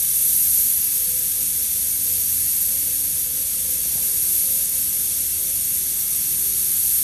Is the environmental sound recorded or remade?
recorded